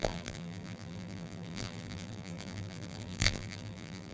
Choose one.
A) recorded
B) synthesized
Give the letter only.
B